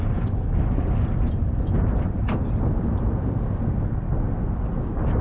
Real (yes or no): yes